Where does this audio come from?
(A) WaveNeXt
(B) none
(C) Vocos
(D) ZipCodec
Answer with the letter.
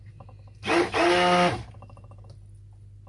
B